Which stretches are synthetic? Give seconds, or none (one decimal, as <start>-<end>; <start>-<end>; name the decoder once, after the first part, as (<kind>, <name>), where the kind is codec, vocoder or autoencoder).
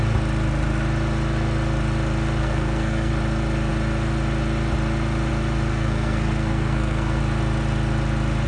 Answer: 2.4-3.1 (codec, SNAC); 5.7-7.2